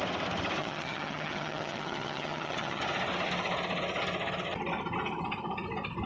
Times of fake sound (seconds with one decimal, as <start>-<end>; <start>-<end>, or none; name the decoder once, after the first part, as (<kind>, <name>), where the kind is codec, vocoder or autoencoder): 0.6-2.8 (vocoder, HiFi-GAN)